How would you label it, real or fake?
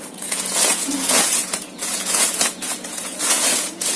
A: fake